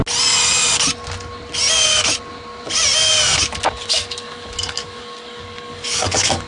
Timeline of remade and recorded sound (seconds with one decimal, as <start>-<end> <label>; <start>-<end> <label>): 0.0-3.9 recorded; 3.9-6.5 remade